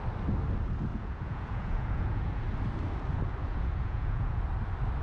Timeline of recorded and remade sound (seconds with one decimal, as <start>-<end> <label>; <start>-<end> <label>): 0.0-0.9 recorded; 0.9-2.4 remade; 2.4-3.4 recorded; 3.4-4.4 remade; 4.4-5.0 recorded